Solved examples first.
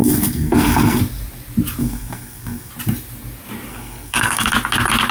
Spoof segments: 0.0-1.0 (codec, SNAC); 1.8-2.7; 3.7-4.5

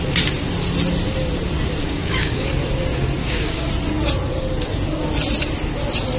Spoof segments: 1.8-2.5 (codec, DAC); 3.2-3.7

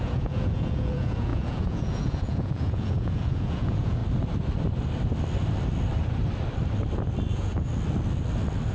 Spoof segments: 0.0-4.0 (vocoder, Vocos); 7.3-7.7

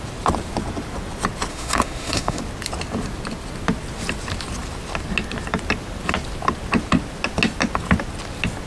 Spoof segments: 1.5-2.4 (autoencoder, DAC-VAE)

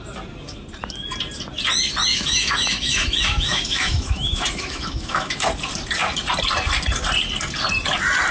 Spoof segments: 2.1-5.5 (autoencoder, DAC-VAE)

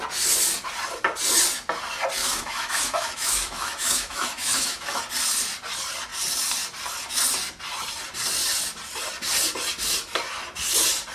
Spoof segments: 2.2-5.0 (autoencoder, DAC-VAE)

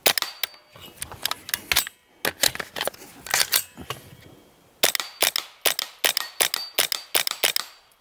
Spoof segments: none

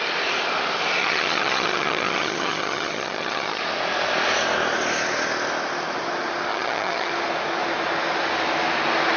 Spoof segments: 1.0-3.6 (vocoder, HiFi-GAN); 6.5-7.1